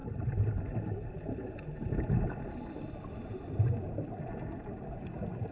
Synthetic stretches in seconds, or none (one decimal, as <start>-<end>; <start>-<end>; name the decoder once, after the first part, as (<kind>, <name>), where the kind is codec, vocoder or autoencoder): none